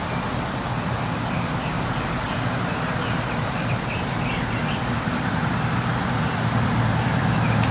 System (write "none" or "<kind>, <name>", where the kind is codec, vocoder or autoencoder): vocoder, BigVGAN v2